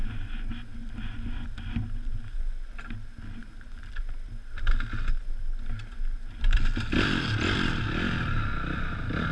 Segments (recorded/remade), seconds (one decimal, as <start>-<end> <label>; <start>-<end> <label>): 0.0-9.3 recorded